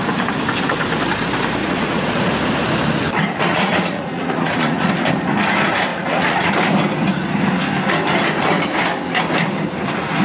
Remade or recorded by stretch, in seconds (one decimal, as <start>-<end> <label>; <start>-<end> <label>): 0.0-1.6 recorded; 1.6-2.3 remade; 2.3-3.5 recorded; 3.5-4.9 remade; 4.9-5.9 recorded; 5.9-6.5 remade; 6.5-10.2 recorded